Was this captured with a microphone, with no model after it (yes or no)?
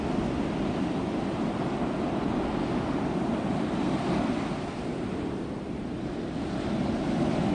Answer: yes